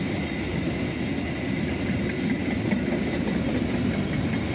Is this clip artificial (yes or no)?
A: no